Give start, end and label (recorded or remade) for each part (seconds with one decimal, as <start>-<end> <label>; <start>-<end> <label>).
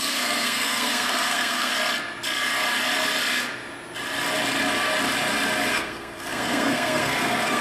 0.0-1.7 remade; 1.7-5.7 recorded; 5.7-7.6 remade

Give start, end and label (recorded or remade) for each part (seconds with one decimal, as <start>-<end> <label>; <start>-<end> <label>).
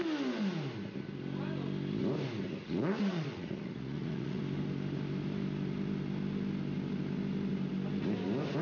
0.0-2.6 recorded; 2.6-4.4 remade; 4.4-8.6 recorded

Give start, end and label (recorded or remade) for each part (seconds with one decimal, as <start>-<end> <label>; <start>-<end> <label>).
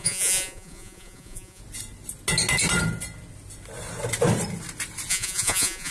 0.0-1.6 remade; 1.6-5.1 recorded; 5.1-5.9 remade